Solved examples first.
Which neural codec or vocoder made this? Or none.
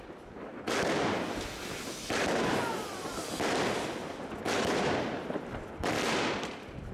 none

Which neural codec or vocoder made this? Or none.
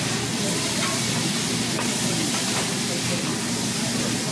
none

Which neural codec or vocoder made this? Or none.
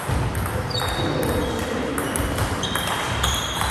none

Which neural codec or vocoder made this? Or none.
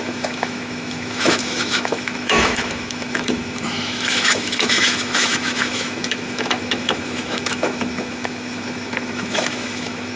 autoencoder, DAC-VAE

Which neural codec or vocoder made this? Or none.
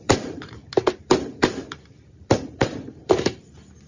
vocoder, BigVGAN v2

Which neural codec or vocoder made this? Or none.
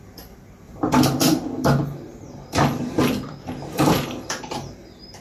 vocoder, BigVGAN v2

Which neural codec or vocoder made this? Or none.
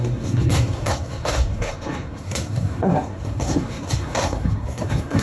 codec, SNAC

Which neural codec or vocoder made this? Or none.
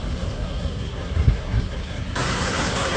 codec, SNAC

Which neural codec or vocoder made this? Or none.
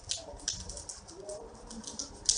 none